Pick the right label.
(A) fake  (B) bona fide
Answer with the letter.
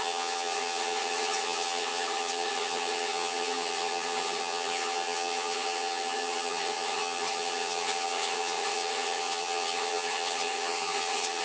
A